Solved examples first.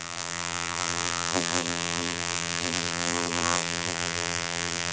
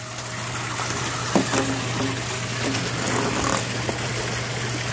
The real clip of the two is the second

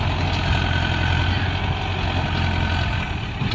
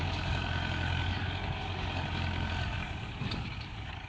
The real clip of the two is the first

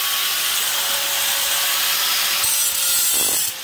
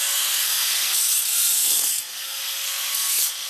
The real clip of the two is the first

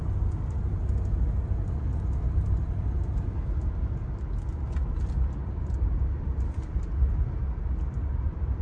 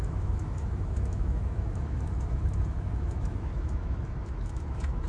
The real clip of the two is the first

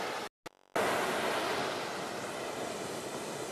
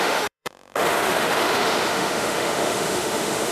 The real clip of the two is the first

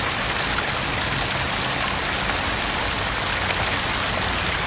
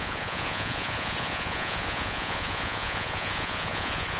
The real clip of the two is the first